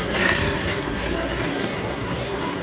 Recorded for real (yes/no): no